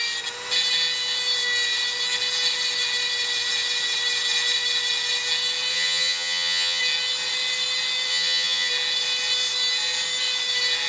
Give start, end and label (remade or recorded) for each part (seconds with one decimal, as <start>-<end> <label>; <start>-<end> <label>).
0.0-5.7 recorded; 5.7-6.8 remade; 6.8-8.1 recorded; 8.1-8.7 remade; 8.7-10.9 recorded